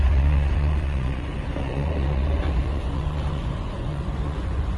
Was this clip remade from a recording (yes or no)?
yes